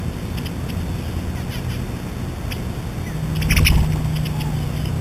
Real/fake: real